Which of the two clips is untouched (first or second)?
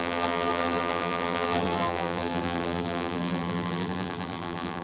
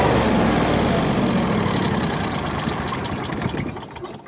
second